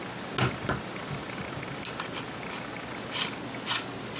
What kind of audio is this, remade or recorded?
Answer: recorded